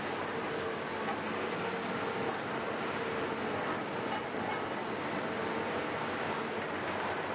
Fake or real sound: real